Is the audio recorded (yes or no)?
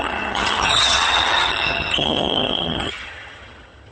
no